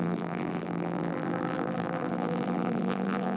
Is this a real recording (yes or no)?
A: no